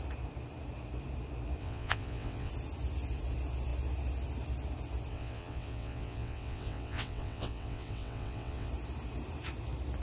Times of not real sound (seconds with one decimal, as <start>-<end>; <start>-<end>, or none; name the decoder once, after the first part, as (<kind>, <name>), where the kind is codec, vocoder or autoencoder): 1.6-2.5 (vocoder, WaveNeXt); 5.1-8.7